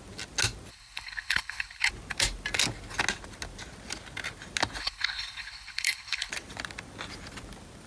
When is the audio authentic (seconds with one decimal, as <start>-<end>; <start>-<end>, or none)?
0.0-0.7; 1.9-4.8; 6.3-7.9